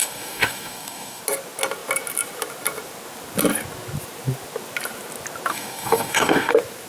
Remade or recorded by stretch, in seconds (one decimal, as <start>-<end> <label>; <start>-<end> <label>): 0.0-1.2 remade; 1.2-5.5 recorded; 5.5-6.5 remade; 6.5-6.9 recorded